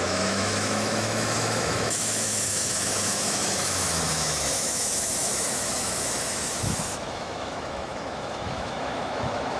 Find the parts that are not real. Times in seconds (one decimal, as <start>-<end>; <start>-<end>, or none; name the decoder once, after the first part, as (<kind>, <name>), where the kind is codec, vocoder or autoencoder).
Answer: 0.0-9.6 (autoencoder, DAC-VAE)